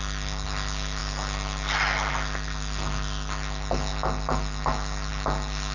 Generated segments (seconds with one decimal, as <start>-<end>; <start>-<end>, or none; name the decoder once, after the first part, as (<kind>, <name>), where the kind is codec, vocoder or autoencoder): none